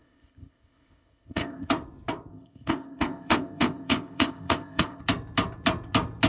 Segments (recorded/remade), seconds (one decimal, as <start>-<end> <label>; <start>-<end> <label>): 0.0-1.7 remade; 1.7-2.3 recorded; 2.3-5.0 remade; 5.0-6.3 recorded